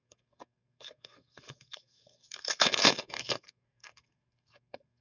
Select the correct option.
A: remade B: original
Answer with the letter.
A